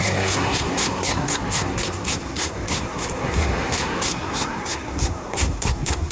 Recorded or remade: remade